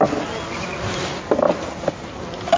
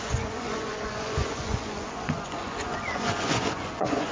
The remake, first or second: second